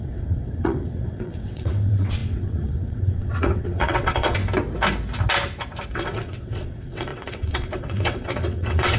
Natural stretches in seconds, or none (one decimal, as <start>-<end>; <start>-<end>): 4.4-5.9